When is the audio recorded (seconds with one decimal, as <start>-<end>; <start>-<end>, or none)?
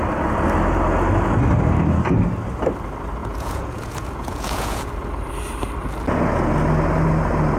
0.0-3.2; 4.9-7.6